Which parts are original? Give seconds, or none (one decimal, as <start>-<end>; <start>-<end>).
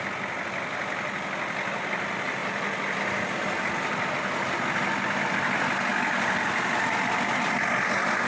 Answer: 0.0-8.3